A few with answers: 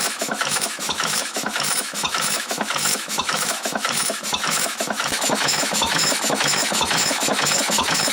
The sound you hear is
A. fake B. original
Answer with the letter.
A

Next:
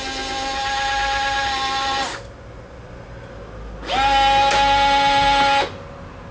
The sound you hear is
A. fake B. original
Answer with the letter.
B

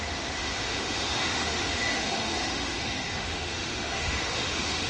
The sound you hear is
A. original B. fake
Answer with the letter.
B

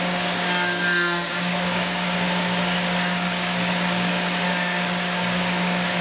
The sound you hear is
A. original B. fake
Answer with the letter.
B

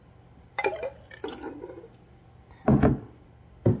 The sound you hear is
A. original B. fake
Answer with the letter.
A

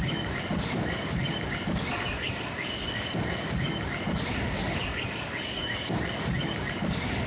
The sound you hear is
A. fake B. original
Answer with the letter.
A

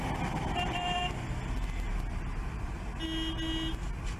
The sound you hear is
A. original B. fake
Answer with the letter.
A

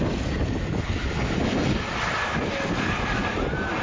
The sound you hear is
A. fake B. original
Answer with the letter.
B